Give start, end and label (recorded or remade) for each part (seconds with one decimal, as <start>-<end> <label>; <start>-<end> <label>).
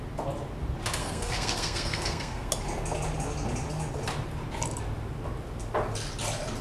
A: 0.0-1.0 recorded; 1.0-2.5 remade; 2.5-6.6 recorded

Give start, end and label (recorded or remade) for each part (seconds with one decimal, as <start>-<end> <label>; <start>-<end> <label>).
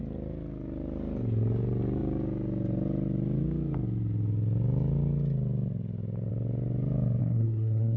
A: 0.0-7.2 recorded; 7.2-8.0 remade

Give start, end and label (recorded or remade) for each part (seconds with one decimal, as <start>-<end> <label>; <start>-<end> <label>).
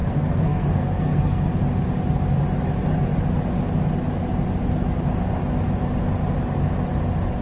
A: 0.0-1.5 remade; 1.5-7.4 recorded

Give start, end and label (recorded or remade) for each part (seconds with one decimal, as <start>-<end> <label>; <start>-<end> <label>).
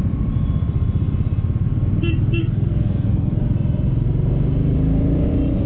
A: 0.0-2.4 recorded; 2.4-3.4 remade; 3.4-5.7 recorded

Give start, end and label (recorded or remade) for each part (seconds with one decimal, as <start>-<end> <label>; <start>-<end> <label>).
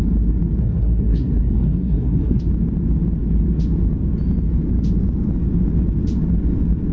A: 0.0-0.6 recorded; 0.6-2.4 remade; 2.4-6.9 recorded